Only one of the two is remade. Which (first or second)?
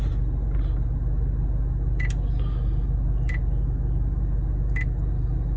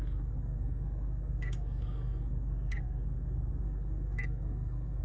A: second